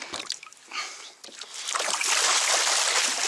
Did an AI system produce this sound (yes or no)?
no